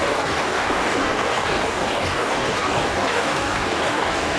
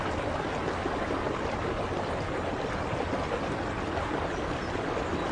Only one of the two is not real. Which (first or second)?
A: first